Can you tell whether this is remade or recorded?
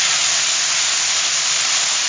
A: recorded